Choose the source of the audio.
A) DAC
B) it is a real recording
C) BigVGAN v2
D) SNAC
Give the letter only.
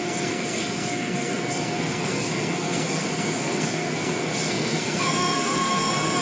D